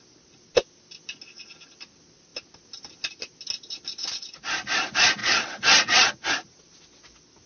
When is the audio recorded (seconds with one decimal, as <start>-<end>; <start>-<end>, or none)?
0.0-5.2; 6.1-7.5